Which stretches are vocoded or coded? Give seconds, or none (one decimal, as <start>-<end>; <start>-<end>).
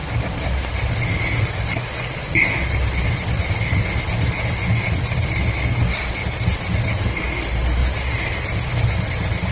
0.0-0.7; 7.8-8.7